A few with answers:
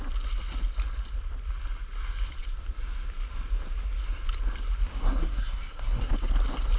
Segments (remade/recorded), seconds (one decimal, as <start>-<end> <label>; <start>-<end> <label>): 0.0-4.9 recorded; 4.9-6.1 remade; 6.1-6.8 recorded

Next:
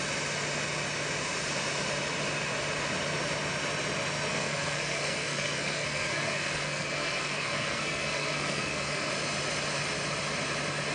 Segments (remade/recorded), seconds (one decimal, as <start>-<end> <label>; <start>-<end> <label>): 0.0-4.3 recorded; 4.3-9.1 remade; 9.1-10.9 recorded

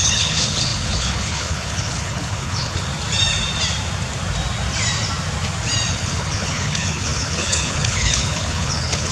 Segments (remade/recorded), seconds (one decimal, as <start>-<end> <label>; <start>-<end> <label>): 0.0-2.9 remade; 2.9-5.9 recorded; 5.9-9.1 remade

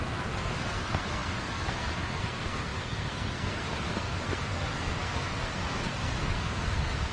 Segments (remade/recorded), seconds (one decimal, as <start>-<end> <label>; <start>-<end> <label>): 0.0-7.1 remade

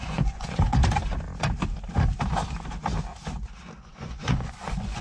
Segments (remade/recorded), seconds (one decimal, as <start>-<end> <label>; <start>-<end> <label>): 0.0-0.8 remade; 0.8-3.8 recorded; 3.8-5.0 remade

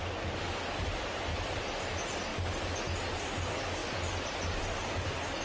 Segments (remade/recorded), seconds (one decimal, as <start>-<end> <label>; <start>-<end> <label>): 0.0-1.3 recorded; 1.3-1.8 remade; 1.8-2.3 recorded; 2.3-2.8 remade; 2.8-3.8 recorded; 3.8-5.0 remade; 5.0-5.4 recorded

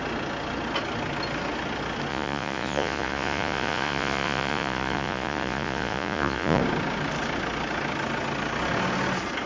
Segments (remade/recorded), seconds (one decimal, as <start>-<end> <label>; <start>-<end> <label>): 0.0-2.1 recorded; 2.1-6.6 remade; 6.6-9.5 recorded